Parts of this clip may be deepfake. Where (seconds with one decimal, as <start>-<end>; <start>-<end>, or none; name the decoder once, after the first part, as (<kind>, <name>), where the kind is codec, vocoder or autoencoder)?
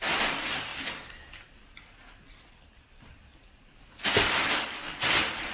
none